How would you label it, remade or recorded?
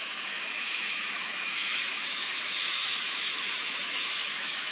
remade